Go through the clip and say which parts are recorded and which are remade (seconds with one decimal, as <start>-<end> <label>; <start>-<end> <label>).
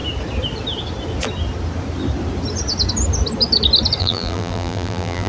0.0-4.0 recorded; 4.0-5.3 remade